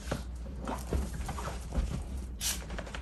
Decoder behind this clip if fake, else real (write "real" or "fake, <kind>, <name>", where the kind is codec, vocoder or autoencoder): fake, vocoder, BigVGAN v2